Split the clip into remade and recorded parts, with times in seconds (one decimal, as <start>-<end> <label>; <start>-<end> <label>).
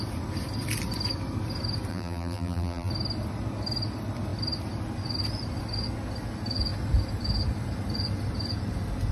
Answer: 0.0-1.9 recorded; 1.9-2.9 remade; 2.9-9.1 recorded